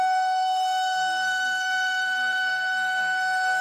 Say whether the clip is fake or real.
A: fake